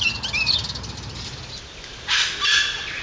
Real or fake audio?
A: real